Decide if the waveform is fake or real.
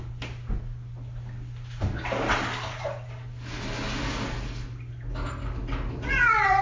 real